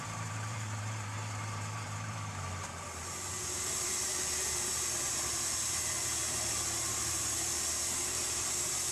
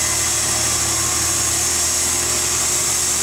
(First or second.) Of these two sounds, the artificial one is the first